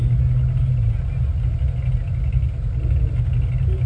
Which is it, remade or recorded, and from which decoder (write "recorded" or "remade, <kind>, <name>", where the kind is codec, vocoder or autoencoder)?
recorded